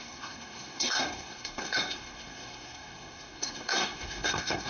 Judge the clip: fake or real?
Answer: fake